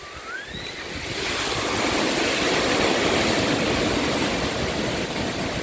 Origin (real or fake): real